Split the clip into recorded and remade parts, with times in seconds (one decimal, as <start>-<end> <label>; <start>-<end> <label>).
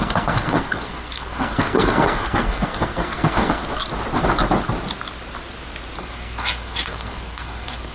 0.0-3.6 remade; 3.6-6.0 recorded; 6.0-7.9 remade